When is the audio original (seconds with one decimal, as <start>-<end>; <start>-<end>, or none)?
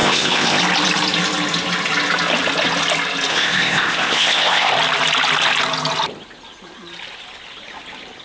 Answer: 0.6-3.3; 4.7-8.2